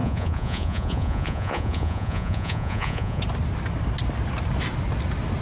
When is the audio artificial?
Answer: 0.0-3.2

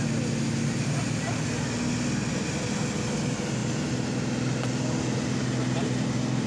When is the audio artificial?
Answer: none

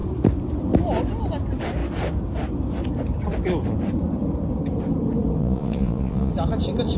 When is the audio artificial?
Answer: 5.4-6.3

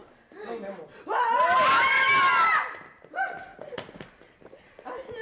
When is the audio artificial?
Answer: 3.5-4.1

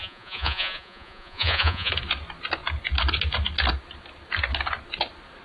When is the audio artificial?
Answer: 0.0-1.9

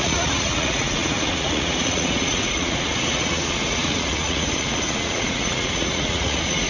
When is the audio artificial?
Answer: 0.0-6.7

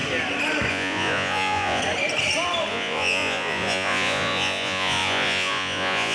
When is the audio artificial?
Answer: 0.7-1.8; 2.7-6.1